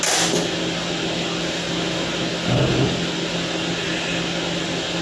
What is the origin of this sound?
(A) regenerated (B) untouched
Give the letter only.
B